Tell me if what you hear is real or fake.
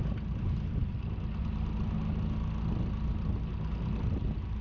real